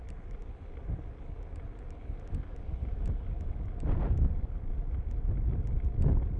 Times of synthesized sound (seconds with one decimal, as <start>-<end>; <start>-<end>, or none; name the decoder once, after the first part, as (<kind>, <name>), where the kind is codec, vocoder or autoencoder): none